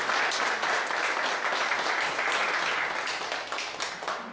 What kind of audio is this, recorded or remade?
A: recorded